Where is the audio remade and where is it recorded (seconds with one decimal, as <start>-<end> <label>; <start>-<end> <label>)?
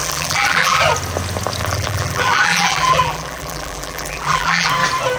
0.0-0.8 remade; 0.8-1.6 recorded; 1.6-4.7 remade; 4.7-5.2 recorded